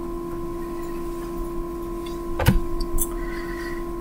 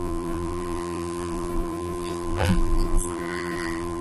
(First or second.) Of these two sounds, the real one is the first